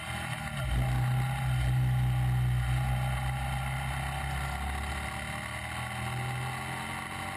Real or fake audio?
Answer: real